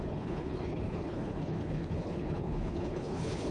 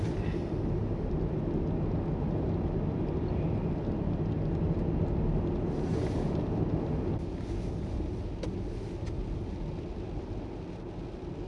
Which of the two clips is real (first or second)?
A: second